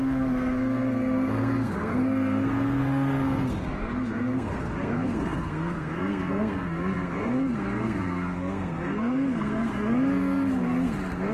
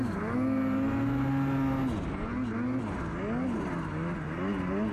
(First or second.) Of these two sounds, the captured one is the second